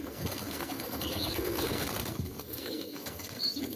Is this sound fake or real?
fake